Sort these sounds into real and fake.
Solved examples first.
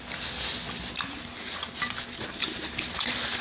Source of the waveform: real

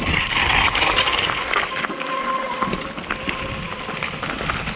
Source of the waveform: real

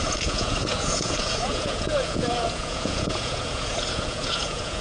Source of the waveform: fake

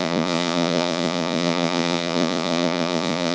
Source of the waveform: fake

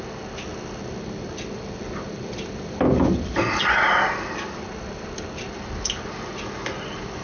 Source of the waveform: real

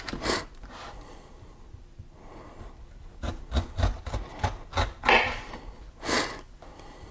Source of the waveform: real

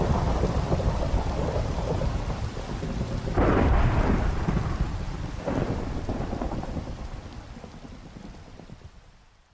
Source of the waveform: real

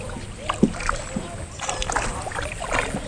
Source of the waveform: real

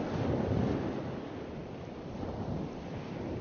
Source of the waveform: real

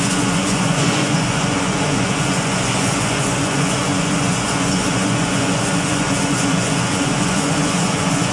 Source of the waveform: fake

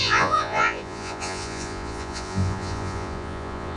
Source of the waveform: fake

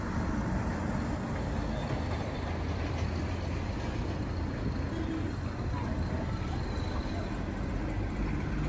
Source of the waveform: real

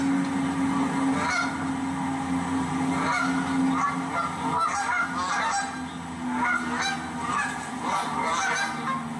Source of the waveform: real